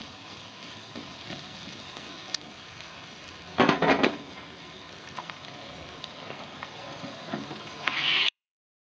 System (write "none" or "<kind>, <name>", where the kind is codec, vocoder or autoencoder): codec, SNAC